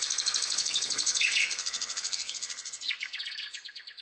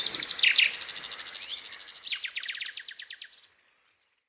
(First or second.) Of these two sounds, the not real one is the first